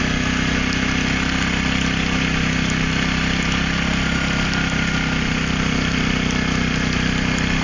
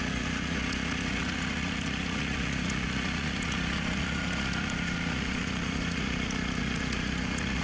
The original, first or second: first